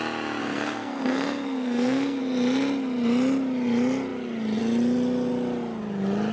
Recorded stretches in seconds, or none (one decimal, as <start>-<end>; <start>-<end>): 0.0-0.4; 2.2-6.3